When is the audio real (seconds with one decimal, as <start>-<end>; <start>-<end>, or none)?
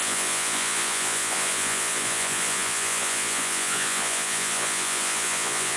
none